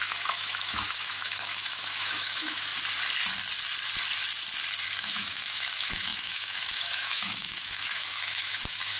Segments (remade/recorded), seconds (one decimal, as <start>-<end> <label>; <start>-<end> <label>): 0.0-2.7 remade; 2.7-5.0 recorded; 5.0-9.0 remade